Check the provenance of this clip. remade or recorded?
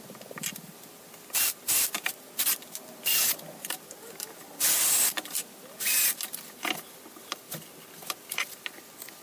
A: recorded